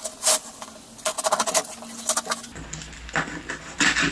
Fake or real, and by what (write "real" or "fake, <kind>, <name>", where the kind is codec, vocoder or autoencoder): real